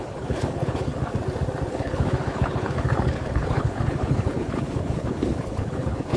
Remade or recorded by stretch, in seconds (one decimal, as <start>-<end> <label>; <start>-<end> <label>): 0.0-0.9 remade; 0.9-1.7 recorded; 1.7-6.2 remade